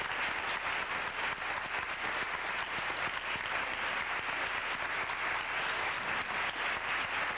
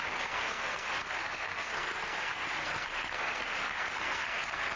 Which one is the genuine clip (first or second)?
first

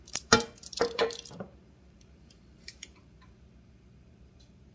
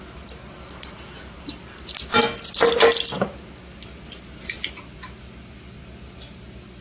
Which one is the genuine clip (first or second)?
second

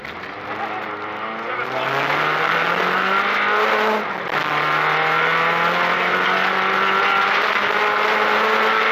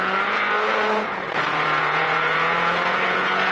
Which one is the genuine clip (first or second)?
first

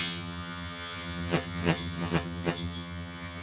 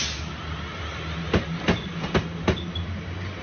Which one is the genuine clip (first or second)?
second